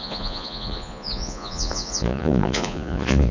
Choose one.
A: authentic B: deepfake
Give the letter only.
B